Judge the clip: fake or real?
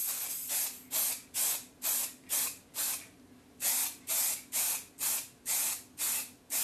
real